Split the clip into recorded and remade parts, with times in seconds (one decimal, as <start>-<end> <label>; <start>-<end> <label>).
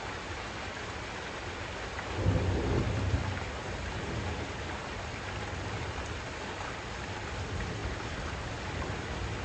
0.0-9.4 recorded